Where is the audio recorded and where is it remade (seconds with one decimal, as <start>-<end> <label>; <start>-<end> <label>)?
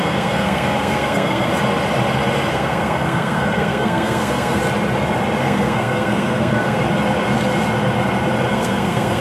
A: 0.0-1.5 remade; 1.5-2.5 recorded; 2.5-4.6 remade; 4.6-5.4 recorded; 5.4-6.8 remade; 6.8-8.5 recorded; 8.5-9.2 remade